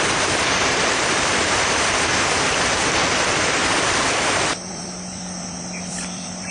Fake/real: fake